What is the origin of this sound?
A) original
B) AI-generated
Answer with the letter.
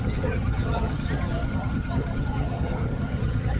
B